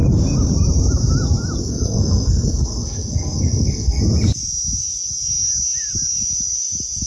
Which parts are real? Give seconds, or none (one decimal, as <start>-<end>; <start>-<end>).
0.0-1.6; 4.0-7.1